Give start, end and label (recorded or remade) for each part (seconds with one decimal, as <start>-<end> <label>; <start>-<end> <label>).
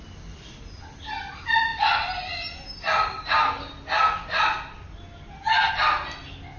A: 0.0-6.6 recorded